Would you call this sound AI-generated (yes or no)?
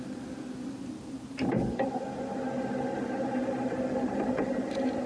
no